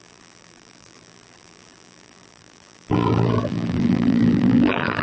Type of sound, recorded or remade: remade